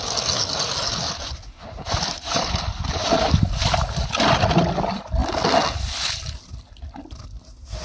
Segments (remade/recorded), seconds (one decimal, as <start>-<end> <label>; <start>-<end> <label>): 0.0-7.8 recorded